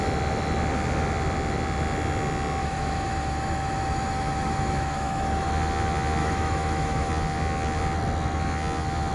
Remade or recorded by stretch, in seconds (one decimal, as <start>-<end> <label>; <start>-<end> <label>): 0.0-2.6 recorded; 2.6-5.5 remade; 5.5-6.2 recorded; 6.2-7.1 remade; 7.1-9.1 recorded